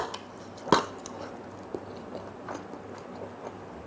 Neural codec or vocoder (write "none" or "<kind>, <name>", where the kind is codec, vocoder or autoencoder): none